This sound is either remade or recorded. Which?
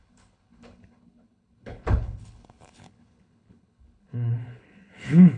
remade